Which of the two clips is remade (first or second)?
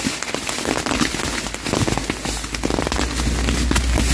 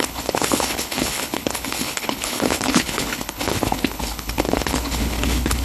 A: second